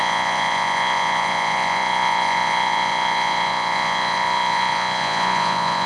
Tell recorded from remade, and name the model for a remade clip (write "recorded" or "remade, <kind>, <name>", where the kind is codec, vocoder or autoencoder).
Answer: remade, vocoder, Vocos